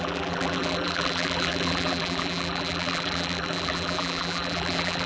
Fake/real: fake